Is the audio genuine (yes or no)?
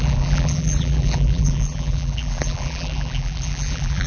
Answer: no